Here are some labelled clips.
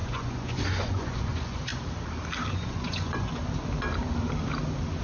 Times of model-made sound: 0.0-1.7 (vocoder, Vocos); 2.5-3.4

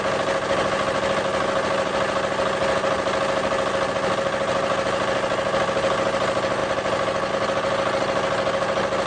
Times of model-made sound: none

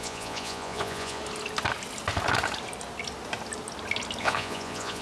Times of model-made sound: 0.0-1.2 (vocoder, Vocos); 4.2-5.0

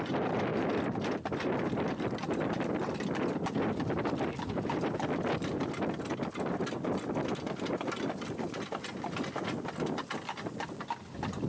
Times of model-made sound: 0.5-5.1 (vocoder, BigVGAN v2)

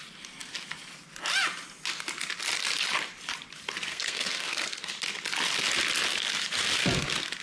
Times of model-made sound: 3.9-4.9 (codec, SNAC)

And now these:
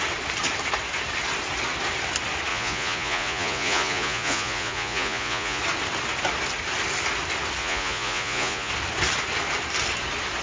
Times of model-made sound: 2.5-5.6 (vocoder, Vocos); 7.6-8.7

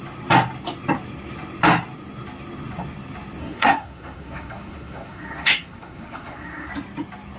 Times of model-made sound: 3.4-6.7 (codec, SNAC)

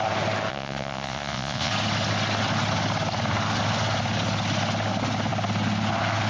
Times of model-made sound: 0.5-1.7 (vocoder, Vocos)